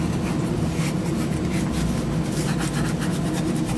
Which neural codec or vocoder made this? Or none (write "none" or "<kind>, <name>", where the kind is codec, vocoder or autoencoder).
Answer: none